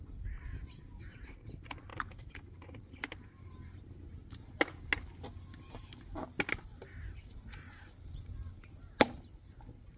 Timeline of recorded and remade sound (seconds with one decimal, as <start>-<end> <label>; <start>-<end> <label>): 0.0-10.0 recorded